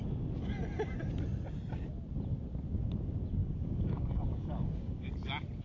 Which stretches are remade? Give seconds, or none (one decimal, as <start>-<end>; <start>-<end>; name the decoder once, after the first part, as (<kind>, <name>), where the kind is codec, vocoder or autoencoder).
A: 3.4-5.1 (codec, DAC)